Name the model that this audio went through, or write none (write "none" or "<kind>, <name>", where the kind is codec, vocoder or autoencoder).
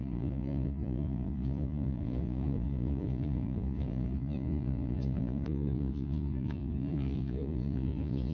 vocoder, Vocos